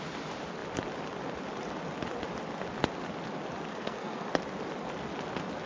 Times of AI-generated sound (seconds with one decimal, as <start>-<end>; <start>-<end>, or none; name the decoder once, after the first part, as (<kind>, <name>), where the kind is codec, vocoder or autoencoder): 3.7-4.3 (codec, SNAC)